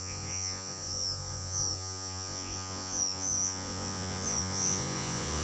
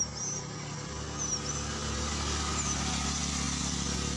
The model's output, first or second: first